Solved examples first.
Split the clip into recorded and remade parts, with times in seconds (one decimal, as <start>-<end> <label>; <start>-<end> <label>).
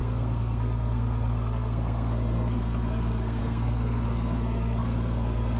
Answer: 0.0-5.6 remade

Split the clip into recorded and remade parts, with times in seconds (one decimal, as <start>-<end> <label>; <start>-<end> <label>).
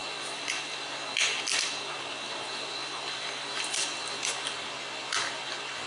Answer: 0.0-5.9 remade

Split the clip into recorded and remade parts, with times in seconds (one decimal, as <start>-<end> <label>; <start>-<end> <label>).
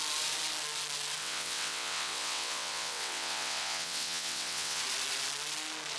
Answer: 0.0-1.2 recorded; 1.2-4.8 remade; 4.8-6.0 recorded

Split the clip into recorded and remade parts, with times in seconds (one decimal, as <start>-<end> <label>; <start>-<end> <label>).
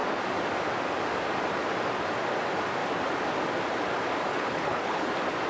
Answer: 0.0-4.3 recorded; 4.3-5.1 remade; 5.1-5.5 recorded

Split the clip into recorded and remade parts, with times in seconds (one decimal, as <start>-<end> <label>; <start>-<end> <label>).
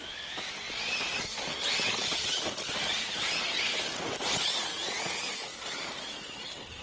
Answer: 0.0-6.8 recorded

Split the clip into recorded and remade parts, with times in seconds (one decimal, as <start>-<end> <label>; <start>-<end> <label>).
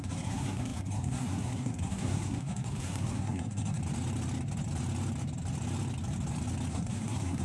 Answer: 0.0-3.8 remade; 3.8-6.7 recorded; 6.7-7.4 remade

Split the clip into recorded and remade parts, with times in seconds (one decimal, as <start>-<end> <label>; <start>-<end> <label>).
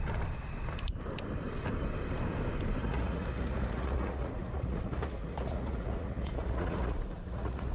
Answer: 0.0-2.8 recorded; 2.8-7.7 remade